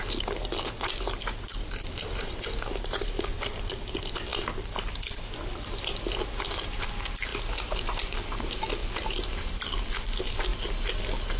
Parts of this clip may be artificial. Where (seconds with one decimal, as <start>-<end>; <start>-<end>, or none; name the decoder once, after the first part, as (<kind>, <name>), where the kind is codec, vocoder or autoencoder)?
8.8-9.4 (vocoder, BigVGAN v2)